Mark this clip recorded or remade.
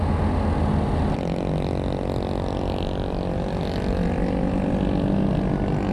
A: recorded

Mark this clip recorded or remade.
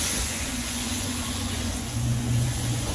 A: remade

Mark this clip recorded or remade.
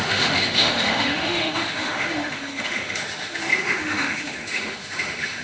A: remade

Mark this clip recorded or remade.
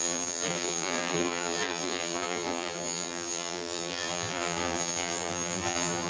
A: remade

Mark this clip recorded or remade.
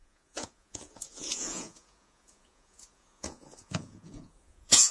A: remade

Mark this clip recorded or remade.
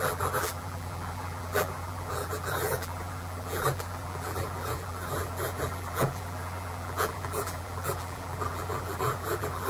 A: remade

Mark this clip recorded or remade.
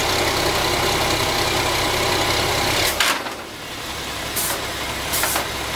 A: recorded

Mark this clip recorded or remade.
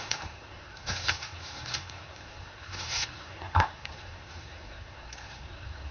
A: remade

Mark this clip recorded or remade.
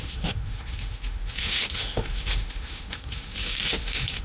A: remade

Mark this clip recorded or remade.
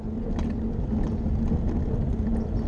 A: recorded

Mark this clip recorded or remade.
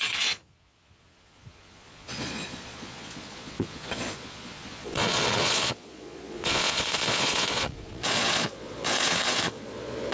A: remade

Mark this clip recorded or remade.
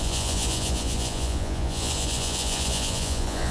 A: remade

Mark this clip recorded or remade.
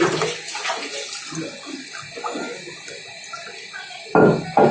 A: recorded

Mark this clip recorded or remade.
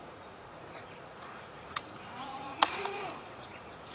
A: remade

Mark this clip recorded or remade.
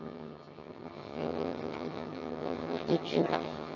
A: remade